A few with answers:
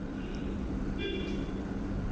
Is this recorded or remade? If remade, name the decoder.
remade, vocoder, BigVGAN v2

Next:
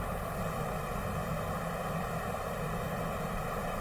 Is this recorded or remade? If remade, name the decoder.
remade, vocoder, BigVGAN v2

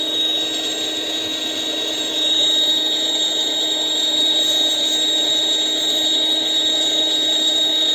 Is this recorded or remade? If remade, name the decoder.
remade, vocoder, BigVGAN v2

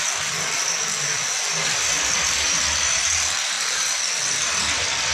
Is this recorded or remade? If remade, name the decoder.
remade, vocoder, BigVGAN v2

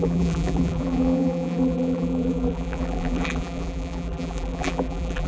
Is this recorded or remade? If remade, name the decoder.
remade, vocoder, BigVGAN v2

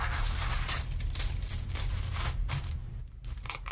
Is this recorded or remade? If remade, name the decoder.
remade, vocoder, BigVGAN v2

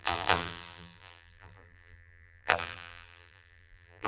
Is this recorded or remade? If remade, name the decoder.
remade, vocoder, BigVGAN v2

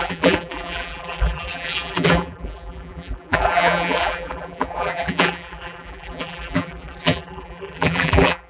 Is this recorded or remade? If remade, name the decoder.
remade, vocoder, BigVGAN v2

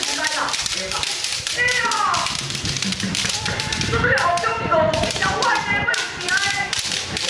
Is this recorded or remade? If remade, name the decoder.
remade, vocoder, BigVGAN v2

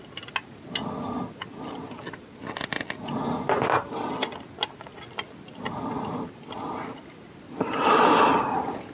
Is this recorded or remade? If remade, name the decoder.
recorded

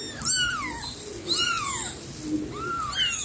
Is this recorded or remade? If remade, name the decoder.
recorded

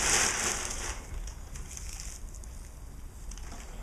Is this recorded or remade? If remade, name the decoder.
recorded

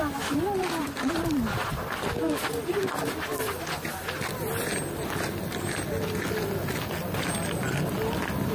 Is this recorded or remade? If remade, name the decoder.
recorded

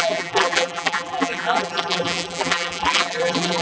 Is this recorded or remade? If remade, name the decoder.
remade, vocoder, BigVGAN v2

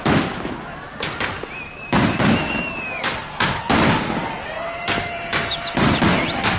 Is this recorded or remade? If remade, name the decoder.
remade, vocoder, BigVGAN v2